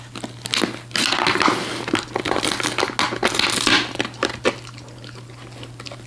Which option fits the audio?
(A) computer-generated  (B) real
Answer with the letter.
B